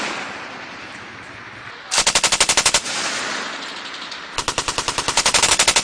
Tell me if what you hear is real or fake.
real